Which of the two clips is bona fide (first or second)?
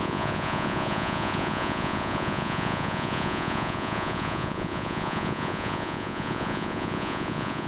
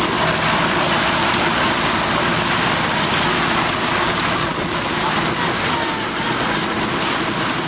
second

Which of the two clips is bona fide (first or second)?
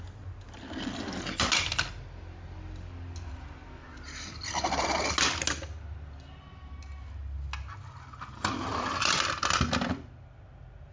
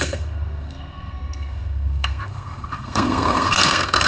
first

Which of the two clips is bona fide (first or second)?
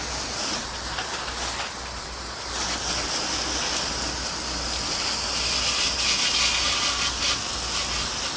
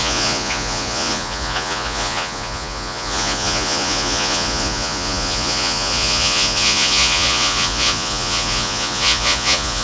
first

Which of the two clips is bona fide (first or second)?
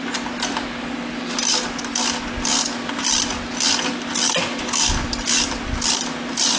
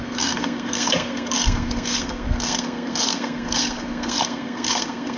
first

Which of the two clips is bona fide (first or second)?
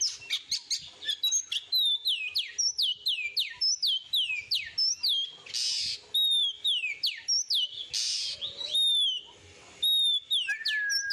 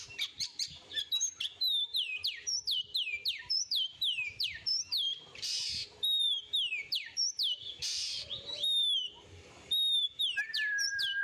first